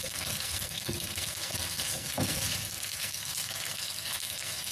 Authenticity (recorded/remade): remade